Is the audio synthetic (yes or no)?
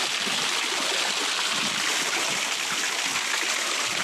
no